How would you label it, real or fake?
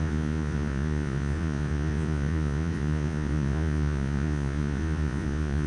fake